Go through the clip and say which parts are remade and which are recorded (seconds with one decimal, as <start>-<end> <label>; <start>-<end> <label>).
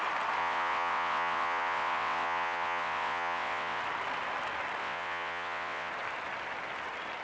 0.0-0.4 recorded; 0.4-3.8 remade; 3.8-4.8 recorded; 4.8-5.9 remade; 5.9-7.2 recorded